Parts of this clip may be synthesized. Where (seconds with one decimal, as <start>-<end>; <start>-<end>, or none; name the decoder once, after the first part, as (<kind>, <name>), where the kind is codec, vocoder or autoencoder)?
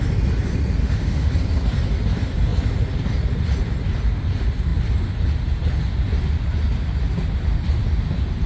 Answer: 0.8-1.3 (autoencoder, DAC-VAE)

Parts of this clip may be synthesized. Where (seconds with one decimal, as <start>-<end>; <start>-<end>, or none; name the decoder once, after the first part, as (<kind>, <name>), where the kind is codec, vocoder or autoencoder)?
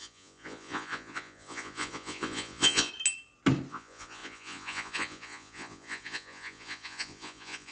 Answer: 0.0-2.9 (vocoder, Vocos); 3.7-7.7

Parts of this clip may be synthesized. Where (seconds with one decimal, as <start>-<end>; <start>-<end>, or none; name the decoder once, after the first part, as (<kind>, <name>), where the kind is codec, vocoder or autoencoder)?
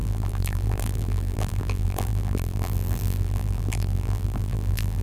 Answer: 0.0-5.0 (vocoder, BigVGAN v2)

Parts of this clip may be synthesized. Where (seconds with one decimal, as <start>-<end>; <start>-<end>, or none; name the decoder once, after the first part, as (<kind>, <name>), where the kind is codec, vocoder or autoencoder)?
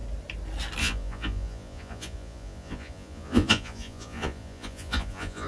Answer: 0.8-5.5 (vocoder, Vocos)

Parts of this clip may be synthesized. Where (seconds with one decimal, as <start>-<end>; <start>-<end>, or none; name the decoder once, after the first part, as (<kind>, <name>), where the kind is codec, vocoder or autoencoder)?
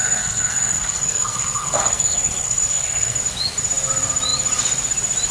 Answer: 0.0-3.2 (codec, SNAC)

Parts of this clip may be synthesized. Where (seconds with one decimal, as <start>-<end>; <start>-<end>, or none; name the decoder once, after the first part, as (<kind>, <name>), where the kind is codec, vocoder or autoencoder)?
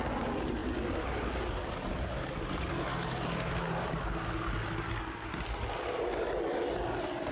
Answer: none